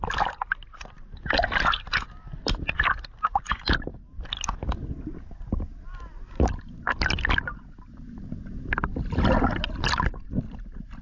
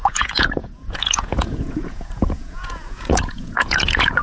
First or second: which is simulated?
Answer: second